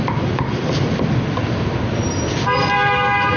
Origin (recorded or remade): recorded